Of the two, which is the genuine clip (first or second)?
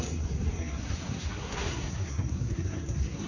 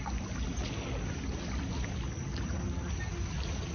second